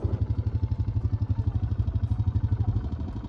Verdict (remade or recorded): recorded